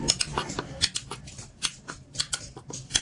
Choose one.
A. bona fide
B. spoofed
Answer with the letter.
B